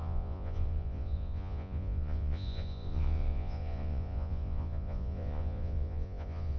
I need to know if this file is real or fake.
fake